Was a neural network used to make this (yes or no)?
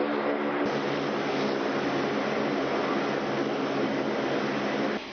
no